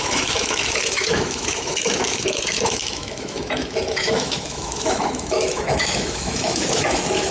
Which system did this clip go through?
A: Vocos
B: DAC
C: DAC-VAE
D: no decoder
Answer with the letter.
C